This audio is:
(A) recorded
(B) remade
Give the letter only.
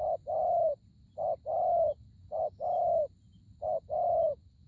A